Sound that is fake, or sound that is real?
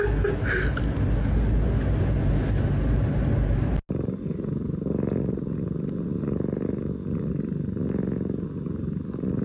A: real